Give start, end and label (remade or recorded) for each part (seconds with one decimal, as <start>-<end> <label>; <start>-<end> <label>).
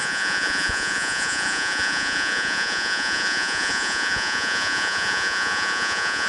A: 0.0-6.3 remade